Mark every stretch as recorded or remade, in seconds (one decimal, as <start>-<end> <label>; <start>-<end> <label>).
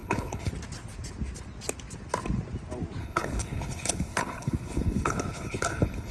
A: 0.0-0.5 remade; 0.5-3.0 recorded; 3.0-6.1 remade